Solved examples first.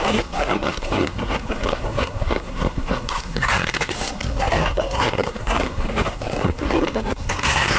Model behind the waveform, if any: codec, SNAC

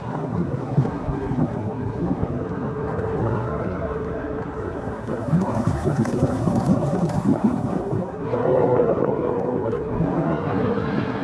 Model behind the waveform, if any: codec, SNAC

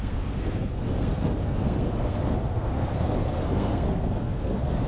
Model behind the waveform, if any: codec, SNAC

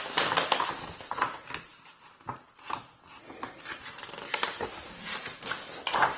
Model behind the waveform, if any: none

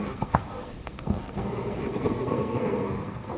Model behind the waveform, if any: codec, SNAC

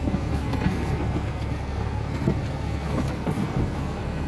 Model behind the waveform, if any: codec, SNAC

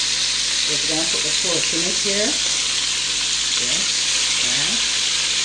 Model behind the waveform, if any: none